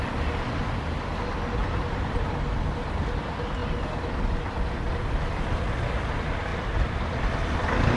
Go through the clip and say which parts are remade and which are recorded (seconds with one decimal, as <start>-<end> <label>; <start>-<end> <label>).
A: 0.0-1.6 recorded; 1.6-2.2 remade; 2.2-8.0 recorded